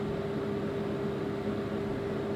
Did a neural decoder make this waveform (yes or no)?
no